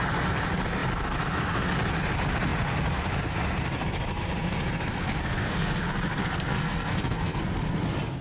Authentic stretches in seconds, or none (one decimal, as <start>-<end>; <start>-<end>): 0.0-5.0; 5.8-6.2; 7.4-8.2